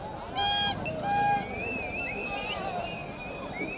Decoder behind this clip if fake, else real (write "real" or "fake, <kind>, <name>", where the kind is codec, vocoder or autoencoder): real